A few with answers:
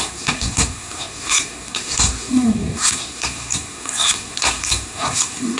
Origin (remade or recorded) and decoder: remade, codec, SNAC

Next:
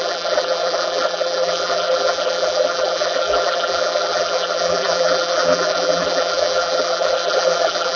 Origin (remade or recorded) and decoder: remade, vocoder, BigVGAN v2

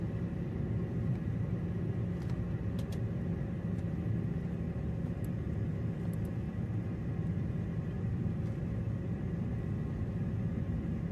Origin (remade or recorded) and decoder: recorded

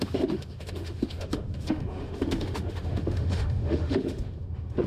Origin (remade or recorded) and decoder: remade, autoencoder, DAC-VAE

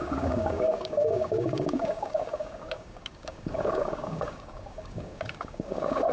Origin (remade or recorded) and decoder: remade, codec, DAC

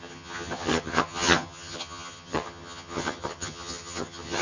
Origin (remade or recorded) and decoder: remade, vocoder, HiFi-GAN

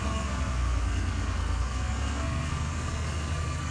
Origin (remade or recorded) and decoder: remade, codec, SNAC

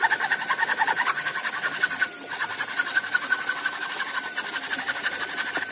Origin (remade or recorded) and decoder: recorded